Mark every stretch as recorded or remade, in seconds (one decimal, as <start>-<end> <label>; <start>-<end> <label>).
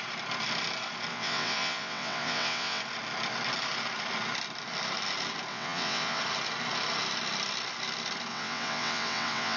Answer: 0.0-1.1 recorded; 1.1-2.8 remade; 2.8-5.5 recorded; 5.5-6.2 remade; 6.2-8.3 recorded; 8.3-9.6 remade